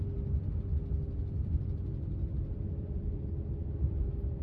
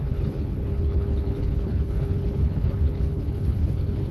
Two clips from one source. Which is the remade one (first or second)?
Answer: second